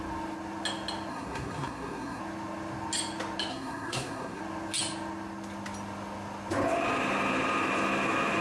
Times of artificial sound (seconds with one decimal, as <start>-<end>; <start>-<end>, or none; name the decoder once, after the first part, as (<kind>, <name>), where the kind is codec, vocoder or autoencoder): 1.1-2.2 (codec, SNAC); 3.5-4.4